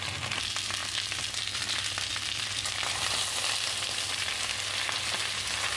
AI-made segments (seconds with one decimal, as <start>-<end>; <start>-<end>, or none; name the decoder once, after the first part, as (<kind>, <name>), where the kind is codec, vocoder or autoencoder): 0.8-4.3 (vocoder, BigVGAN v2)